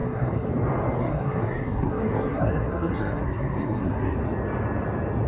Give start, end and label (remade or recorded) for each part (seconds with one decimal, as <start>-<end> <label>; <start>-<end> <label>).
0.0-0.5 remade; 0.5-1.0 recorded; 1.0-4.2 remade; 4.2-5.3 recorded